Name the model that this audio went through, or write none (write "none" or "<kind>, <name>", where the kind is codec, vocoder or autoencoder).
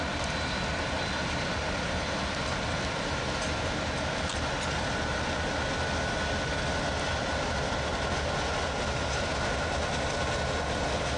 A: none